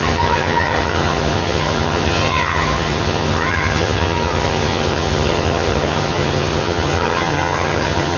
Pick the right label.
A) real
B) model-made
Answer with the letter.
B